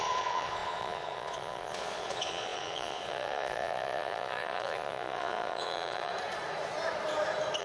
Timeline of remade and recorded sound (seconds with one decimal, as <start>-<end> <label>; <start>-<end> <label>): 0.0-6.1 remade; 6.1-7.6 recorded